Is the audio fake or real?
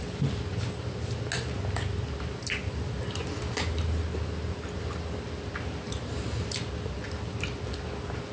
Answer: real